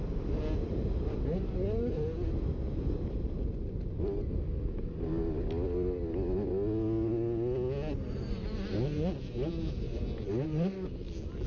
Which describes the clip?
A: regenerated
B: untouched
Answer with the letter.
B